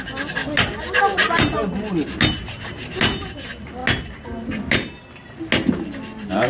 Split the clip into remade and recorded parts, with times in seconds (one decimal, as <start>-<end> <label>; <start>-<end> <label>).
0.0-6.5 recorded